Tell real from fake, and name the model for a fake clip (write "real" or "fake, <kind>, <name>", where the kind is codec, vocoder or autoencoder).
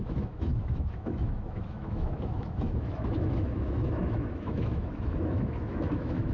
fake, autoencoder, DAC-VAE